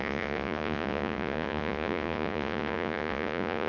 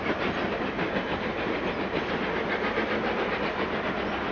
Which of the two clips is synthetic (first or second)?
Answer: first